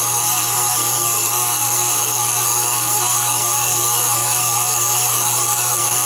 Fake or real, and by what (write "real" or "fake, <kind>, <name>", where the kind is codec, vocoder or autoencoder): fake, codec, SNAC